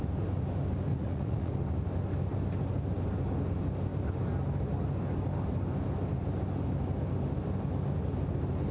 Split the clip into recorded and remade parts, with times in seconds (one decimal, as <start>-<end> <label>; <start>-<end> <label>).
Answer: 0.0-0.9 recorded; 0.9-1.5 remade; 1.5-8.7 recorded